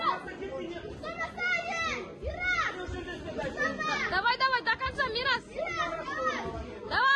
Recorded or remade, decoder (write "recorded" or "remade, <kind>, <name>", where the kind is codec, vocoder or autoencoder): recorded